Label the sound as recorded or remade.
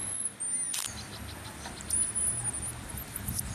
recorded